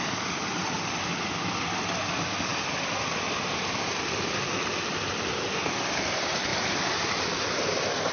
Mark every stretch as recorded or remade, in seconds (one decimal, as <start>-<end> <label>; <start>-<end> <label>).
0.0-2.5 recorded; 2.5-4.6 remade; 4.6-8.1 recorded